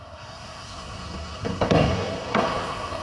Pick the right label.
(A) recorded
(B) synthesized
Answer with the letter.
B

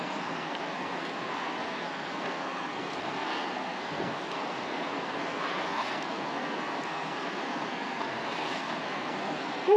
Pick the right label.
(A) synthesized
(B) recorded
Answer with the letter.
A